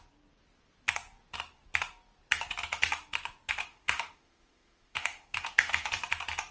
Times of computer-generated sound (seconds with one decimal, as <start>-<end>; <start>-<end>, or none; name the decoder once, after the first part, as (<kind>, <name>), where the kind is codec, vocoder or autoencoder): 3.7-5.9 (autoencoder, DAC-VAE)